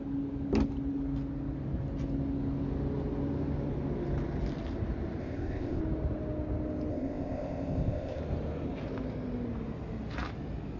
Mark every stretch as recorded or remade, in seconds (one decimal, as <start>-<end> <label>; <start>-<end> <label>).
0.0-5.2 recorded; 5.2-5.8 remade; 5.8-6.9 recorded; 6.9-8.2 remade; 8.2-10.8 recorded